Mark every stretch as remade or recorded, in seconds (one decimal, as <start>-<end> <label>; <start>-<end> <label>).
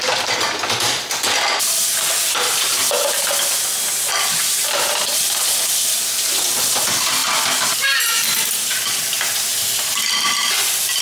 0.0-9.5 recorded; 9.5-10.0 remade; 10.0-11.0 recorded